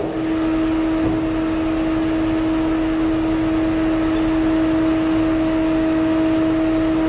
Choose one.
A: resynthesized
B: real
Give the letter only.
B